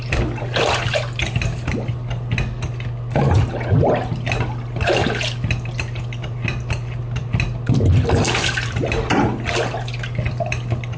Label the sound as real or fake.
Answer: real